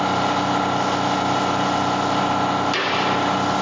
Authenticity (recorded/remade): recorded